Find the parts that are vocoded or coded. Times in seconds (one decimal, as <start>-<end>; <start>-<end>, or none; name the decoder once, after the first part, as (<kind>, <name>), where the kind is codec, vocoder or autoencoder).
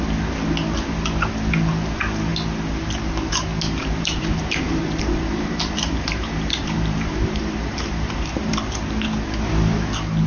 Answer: 3.8-8.5 (vocoder, BigVGAN v2)